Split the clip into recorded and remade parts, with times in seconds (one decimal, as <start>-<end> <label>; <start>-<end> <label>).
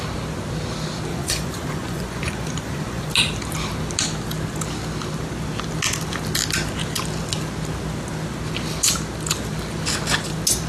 0.0-1.1 recorded; 1.1-3.1 remade; 3.1-10.7 recorded